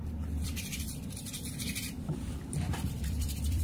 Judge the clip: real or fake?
fake